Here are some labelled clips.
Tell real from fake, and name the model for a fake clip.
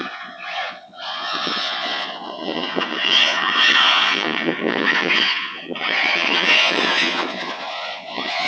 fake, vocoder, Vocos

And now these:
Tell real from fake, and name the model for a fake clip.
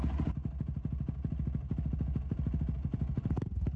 real